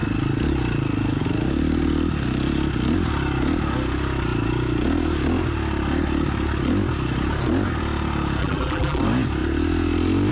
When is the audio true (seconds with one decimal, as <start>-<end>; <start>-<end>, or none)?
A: 0.0-8.4; 9.0-10.3